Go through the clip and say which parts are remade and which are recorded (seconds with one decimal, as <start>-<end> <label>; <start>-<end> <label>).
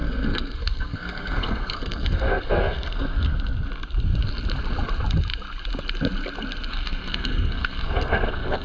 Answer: 0.0-3.3 remade; 3.3-6.7 recorded; 6.7-8.6 remade